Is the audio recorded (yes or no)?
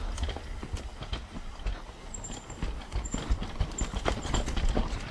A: yes